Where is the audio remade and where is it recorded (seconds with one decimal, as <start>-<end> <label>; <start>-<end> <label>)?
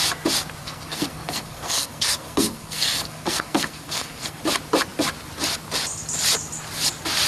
0.0-0.6 recorded; 0.6-4.4 remade; 4.4-7.3 recorded